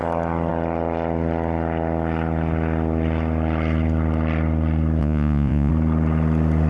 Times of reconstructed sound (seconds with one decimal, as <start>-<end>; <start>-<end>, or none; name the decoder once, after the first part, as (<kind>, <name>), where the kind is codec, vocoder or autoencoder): 5.0-5.7 (vocoder, Vocos)